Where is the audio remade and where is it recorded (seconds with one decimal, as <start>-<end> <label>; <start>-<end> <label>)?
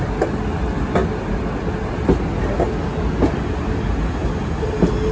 0.0-5.1 recorded